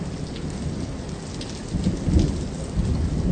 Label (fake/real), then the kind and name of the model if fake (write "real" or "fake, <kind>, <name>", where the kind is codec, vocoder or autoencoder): real